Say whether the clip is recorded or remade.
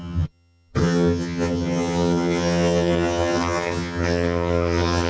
remade